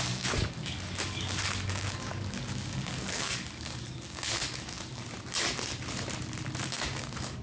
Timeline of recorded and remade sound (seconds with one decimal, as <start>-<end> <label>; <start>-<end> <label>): 0.0-5.0 remade; 5.0-6.6 recorded; 6.6-7.4 remade